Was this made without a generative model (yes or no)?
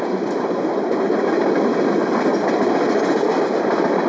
yes